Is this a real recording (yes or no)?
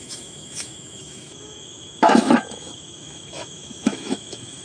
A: no